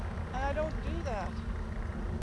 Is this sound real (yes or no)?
yes